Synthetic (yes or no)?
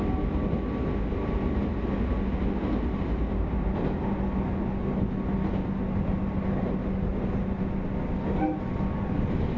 no